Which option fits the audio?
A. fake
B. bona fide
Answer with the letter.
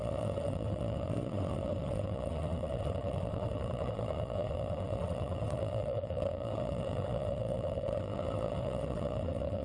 A